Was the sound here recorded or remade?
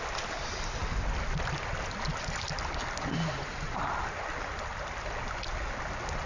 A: recorded